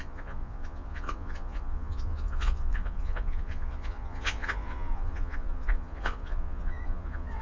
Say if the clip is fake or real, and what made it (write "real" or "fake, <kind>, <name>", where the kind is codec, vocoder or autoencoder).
fake, vocoder, Vocos